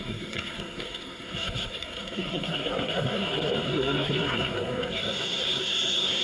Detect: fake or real fake